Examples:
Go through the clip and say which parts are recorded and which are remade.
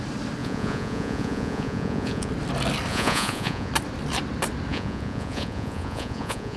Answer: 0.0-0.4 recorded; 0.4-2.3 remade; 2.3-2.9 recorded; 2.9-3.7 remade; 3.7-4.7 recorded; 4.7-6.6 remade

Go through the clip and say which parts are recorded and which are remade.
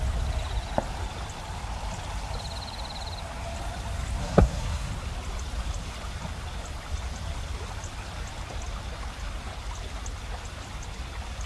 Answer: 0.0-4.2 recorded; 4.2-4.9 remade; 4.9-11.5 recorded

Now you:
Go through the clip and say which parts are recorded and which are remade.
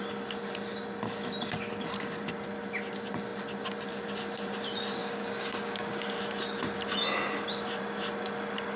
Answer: 0.0-5.0 recorded; 5.0-6.2 remade; 6.2-8.8 recorded